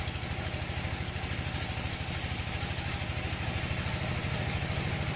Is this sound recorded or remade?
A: recorded